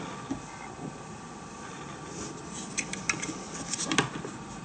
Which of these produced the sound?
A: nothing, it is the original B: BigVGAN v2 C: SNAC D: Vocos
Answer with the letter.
A